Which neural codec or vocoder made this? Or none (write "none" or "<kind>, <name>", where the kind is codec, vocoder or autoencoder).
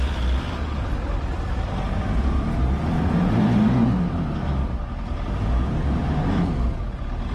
none